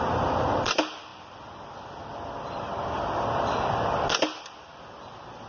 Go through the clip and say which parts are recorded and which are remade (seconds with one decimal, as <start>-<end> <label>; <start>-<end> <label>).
0.0-5.5 recorded